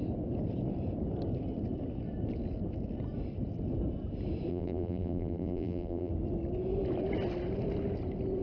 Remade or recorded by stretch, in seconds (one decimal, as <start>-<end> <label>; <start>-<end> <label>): 0.0-4.5 recorded; 4.5-6.1 remade; 6.1-8.4 recorded